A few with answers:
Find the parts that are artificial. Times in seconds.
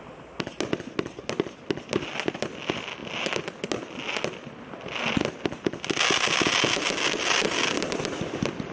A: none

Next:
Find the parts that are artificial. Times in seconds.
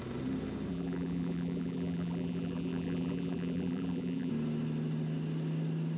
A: 0.7-4.3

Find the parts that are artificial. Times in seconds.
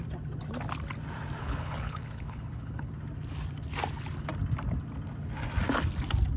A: 1.4-2.9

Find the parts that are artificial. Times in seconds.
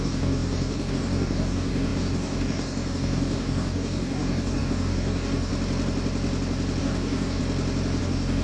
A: 0.0-5.5; 6.8-7.4; 8.0-8.4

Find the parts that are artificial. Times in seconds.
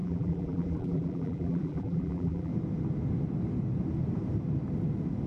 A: 0.0-2.5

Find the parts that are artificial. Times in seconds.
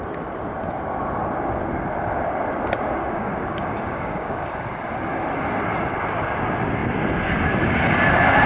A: 3.0-4.5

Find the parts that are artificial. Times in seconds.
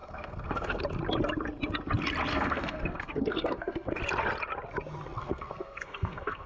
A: 0.0-0.8; 2.3-4.0; 5.2-6.5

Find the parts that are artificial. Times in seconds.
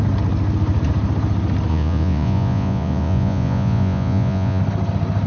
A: 1.7-4.6